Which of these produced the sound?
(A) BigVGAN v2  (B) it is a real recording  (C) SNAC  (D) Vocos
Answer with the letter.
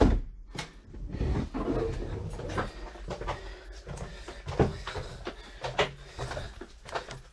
B